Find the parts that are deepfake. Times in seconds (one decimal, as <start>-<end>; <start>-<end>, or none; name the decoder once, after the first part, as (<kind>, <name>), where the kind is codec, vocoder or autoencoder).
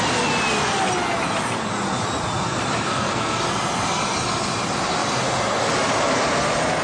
2.9-3.4 (codec, SNAC)